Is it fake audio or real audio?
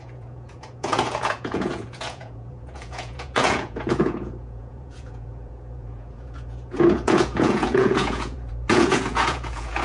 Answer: fake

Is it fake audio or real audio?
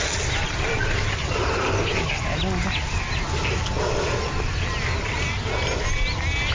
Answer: real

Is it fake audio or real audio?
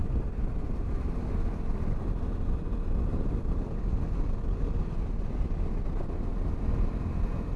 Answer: real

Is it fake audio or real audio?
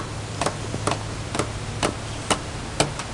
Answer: real